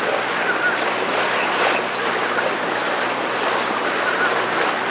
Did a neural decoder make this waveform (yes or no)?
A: no